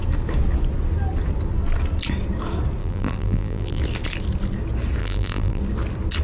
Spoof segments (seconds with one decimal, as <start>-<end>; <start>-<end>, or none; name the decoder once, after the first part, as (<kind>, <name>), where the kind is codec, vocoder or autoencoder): 2.8-3.8 (vocoder, BigVGAN v2); 5.0-5.6